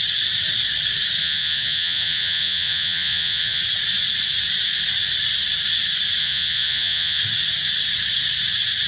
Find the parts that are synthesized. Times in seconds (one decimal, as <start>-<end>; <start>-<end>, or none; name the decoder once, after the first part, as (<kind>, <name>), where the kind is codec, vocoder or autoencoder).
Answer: 1.2-3.6 (vocoder, Vocos); 6.2-7.2